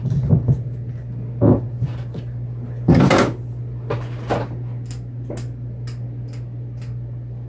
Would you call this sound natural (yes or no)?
yes